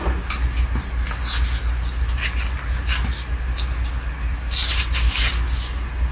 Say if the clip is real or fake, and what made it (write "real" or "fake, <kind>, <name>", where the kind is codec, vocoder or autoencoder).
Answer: real